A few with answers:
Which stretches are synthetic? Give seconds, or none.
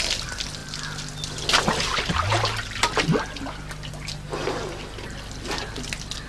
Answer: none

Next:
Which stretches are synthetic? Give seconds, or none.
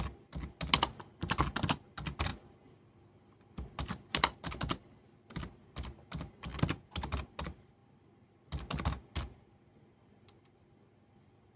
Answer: 2.3-5.1 (vocoder, BigVGAN v2); 6.5-7.2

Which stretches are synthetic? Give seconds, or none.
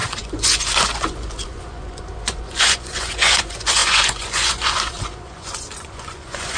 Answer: 0.0-6.6 (vocoder, Vocos)